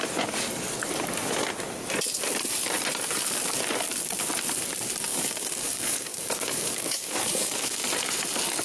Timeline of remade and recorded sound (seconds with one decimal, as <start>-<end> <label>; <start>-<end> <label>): 0.0-5.1 recorded; 5.1-7.8 remade; 7.8-8.6 recorded